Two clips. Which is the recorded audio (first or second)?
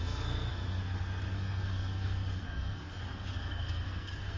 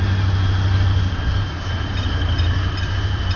second